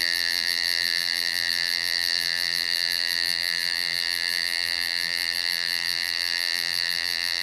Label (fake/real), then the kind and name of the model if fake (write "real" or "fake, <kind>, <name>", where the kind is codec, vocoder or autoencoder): fake, vocoder, BigVGAN v2